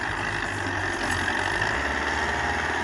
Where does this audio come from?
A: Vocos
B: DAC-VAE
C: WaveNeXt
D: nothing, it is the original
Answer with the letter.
D